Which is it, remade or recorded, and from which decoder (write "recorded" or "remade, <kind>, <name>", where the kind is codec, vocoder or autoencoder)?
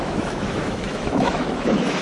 remade, autoencoder, DAC-VAE